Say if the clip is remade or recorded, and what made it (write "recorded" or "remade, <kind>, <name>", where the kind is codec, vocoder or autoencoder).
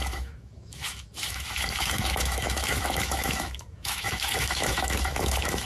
remade, autoencoder, DAC-VAE